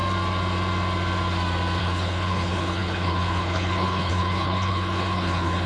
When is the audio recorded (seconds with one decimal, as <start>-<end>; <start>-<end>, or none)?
0.0-1.8